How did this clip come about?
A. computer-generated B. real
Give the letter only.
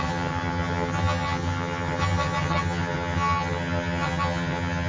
A